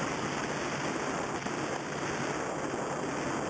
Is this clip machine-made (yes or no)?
no